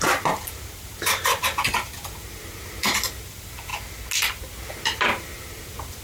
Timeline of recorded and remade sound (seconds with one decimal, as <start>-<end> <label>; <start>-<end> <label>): 0.0-3.7 remade; 3.7-4.8 recorded; 4.8-6.0 remade